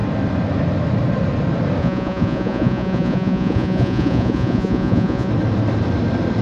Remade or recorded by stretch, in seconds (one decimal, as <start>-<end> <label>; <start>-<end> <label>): 0.0-1.8 recorded; 1.8-5.3 remade; 5.3-6.4 recorded